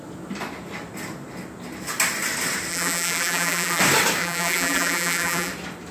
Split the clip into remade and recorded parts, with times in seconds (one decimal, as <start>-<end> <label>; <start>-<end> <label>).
0.0-2.7 recorded; 2.7-3.8 remade; 3.8-4.2 recorded; 4.2-5.5 remade; 5.5-5.9 recorded